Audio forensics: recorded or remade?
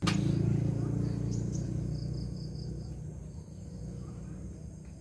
recorded